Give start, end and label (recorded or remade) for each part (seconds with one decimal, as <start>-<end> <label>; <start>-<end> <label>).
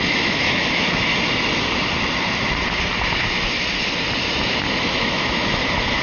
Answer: 0.0-1.1 remade; 1.1-4.7 recorded; 4.7-6.0 remade